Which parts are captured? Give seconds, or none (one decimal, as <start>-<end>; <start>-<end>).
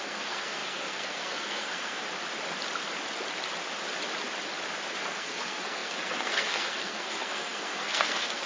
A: 2.0-4.9